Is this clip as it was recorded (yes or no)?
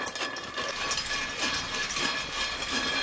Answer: yes